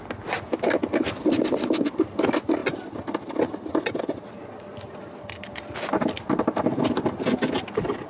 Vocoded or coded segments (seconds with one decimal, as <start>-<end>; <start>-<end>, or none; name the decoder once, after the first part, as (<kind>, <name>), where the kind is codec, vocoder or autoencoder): none